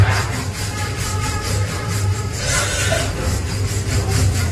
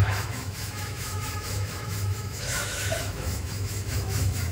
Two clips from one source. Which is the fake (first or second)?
second